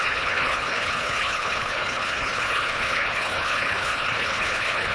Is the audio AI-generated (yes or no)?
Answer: yes